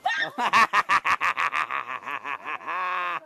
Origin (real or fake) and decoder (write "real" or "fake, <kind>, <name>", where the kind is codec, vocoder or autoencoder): real